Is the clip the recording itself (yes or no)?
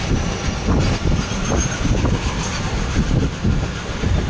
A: yes